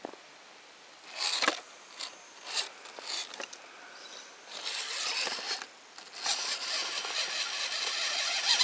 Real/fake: real